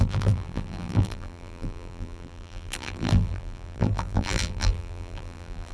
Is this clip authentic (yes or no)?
no